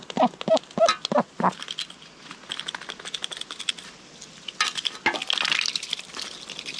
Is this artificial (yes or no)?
no